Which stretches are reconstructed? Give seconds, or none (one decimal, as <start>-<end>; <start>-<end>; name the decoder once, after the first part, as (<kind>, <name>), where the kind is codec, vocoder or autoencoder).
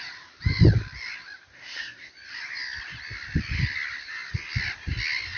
1.5-2.1 (codec, SNAC)